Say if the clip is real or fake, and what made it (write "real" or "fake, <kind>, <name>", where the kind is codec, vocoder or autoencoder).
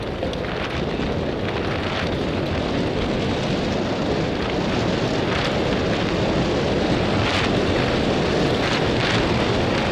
real